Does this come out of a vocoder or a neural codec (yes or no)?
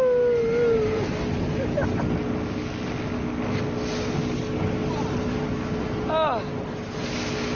no